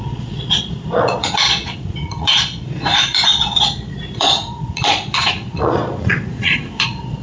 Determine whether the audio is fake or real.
fake